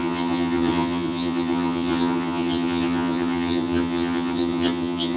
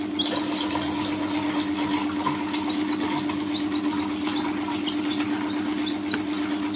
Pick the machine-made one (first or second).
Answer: first